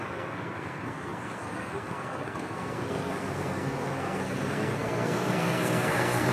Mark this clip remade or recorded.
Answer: remade